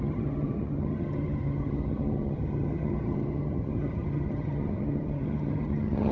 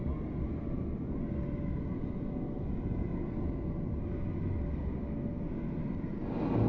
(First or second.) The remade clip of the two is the first